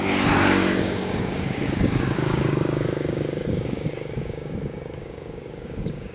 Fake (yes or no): yes